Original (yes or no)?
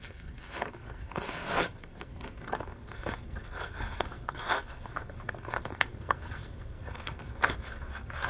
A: no